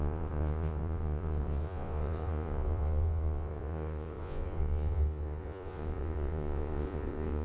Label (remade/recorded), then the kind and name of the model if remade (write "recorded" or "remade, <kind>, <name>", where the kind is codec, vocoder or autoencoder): remade, vocoder, Vocos